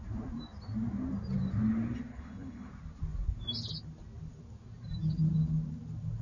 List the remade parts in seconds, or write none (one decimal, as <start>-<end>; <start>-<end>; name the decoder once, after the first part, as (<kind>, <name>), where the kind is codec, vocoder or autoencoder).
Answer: 2.1-2.7 (codec, HILCodec)